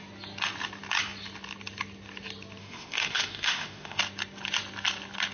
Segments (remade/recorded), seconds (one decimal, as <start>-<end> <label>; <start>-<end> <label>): 0.0-2.6 recorded; 2.6-4.0 remade; 4.0-5.3 recorded